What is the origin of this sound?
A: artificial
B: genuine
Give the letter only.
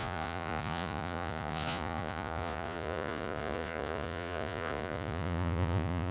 A